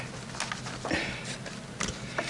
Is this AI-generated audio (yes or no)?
no